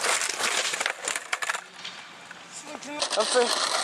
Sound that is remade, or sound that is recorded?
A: recorded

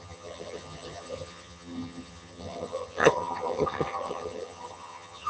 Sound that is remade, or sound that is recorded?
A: remade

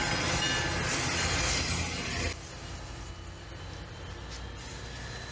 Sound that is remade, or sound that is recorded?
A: recorded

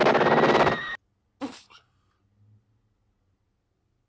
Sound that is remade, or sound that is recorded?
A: recorded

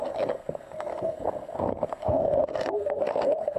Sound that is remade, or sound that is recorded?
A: remade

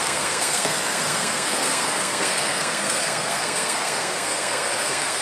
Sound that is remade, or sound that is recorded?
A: remade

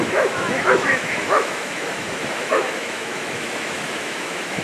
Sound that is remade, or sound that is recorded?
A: remade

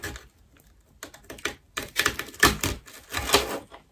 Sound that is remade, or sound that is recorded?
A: recorded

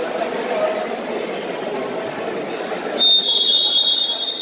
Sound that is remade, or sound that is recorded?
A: recorded